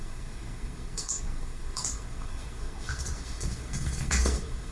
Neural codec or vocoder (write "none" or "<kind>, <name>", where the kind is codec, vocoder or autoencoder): codec, SNAC